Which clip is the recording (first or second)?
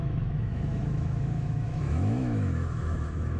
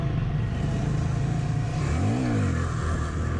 second